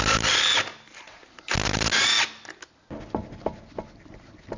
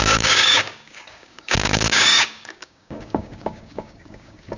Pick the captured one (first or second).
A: first